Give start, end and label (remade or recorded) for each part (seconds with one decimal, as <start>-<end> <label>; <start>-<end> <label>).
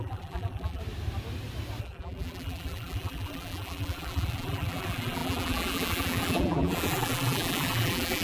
0.0-0.8 remade; 0.8-1.8 recorded; 1.8-8.2 remade